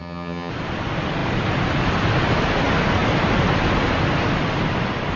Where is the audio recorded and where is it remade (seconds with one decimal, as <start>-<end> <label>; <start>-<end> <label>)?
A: 0.0-0.5 remade; 0.5-5.2 recorded